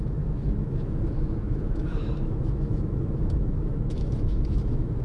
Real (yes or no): no